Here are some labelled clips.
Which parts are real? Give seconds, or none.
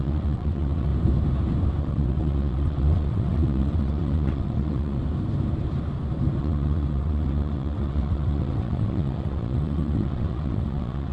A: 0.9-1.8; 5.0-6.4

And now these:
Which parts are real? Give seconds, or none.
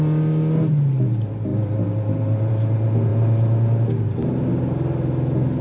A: 0.0-5.6